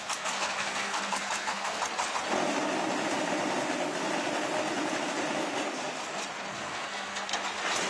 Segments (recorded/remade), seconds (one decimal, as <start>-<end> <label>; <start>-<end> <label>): 0.0-1.8 remade; 1.8-6.5 recorded; 6.5-7.3 remade; 7.3-7.9 recorded